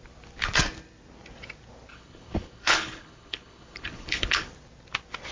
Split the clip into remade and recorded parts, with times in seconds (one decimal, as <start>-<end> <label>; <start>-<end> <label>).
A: 0.0-1.9 recorded; 1.9-4.5 remade; 4.5-5.3 recorded